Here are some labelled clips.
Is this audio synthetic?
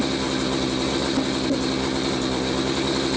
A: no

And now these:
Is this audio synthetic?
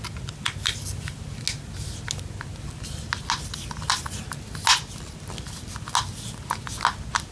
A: no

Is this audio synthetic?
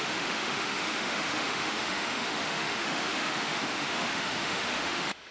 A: yes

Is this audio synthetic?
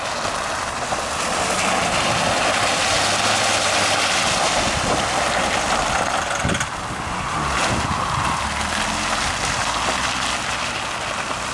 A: no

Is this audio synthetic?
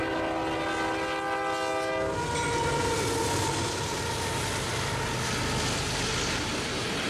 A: no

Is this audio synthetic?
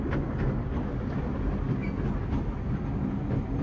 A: no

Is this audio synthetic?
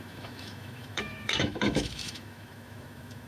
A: yes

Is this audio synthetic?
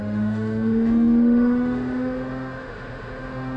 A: yes